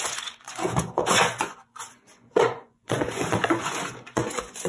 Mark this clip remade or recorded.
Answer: remade